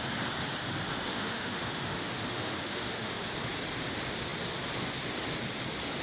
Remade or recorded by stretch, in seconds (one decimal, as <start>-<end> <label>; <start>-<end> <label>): 0.0-1.1 recorded; 1.1-3.1 remade; 3.1-6.0 recorded